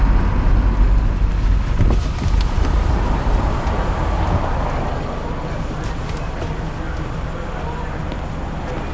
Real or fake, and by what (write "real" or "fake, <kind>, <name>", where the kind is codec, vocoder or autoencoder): real